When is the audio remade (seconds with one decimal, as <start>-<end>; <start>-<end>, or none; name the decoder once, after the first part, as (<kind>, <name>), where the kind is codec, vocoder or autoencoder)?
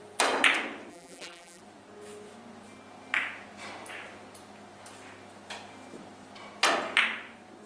0.9-1.6 (vocoder, BigVGAN v2)